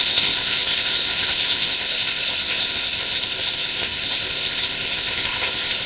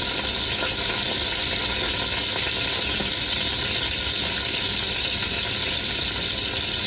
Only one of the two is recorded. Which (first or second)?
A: second